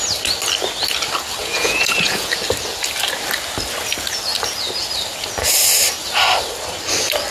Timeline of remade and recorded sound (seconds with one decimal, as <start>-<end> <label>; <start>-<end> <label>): 0.0-1.4 recorded; 1.4-2.3 remade; 2.3-7.3 recorded